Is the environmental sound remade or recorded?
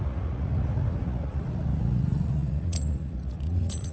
remade